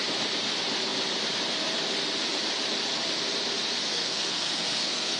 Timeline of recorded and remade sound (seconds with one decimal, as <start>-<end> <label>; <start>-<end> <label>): 0.0-3.9 recorded; 3.9-5.2 remade

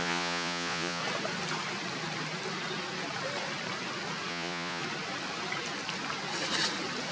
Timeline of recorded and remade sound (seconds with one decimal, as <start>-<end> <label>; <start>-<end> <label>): 0.0-1.0 remade; 1.0-4.3 recorded; 4.3-4.8 remade; 4.8-7.1 recorded

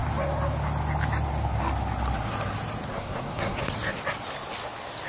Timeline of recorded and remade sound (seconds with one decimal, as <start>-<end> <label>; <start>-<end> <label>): 0.0-2.9 recorded; 2.9-3.6 remade; 3.6-5.1 recorded